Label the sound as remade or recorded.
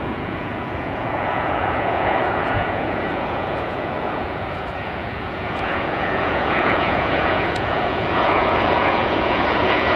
remade